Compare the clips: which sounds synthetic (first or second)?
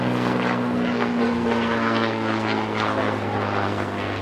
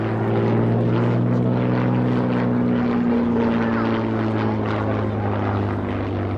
first